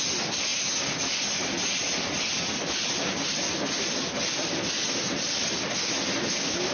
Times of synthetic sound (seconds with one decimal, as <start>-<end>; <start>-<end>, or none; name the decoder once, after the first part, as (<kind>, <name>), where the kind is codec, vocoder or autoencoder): none